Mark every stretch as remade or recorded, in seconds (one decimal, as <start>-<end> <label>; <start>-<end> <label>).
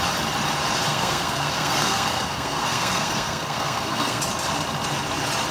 0.0-0.9 recorded; 0.9-4.2 remade; 4.2-5.5 recorded